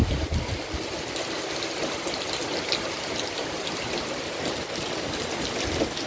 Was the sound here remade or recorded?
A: recorded